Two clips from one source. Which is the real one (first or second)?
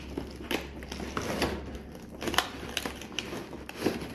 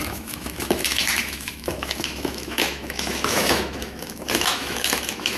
first